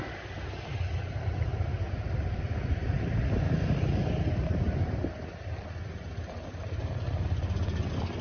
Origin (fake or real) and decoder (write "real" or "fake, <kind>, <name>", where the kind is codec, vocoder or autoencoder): real